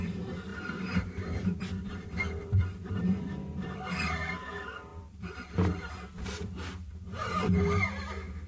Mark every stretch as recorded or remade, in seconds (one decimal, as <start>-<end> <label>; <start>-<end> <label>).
0.0-8.5 remade